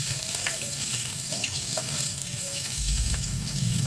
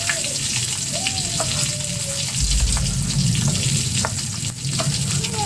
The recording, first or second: second